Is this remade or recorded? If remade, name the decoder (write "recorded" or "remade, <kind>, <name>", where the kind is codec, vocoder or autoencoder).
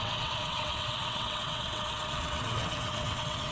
remade, vocoder, WaveNeXt